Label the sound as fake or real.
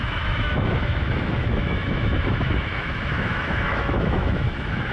fake